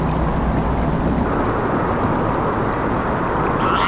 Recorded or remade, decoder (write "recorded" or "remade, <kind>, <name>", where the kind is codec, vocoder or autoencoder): recorded